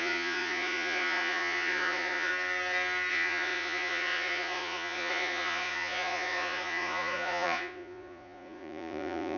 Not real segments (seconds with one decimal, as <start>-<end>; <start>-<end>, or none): 0.0-2.3; 3.1-9.4